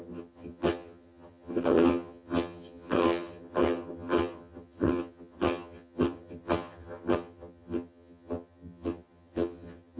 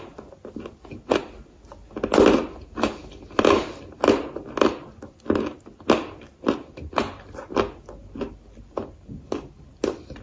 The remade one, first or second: first